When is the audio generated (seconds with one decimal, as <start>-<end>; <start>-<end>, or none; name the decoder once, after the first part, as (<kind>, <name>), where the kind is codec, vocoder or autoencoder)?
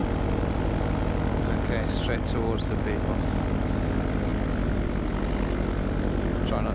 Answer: 0.0-0.7 (vocoder, BigVGAN v2); 4.3-5.1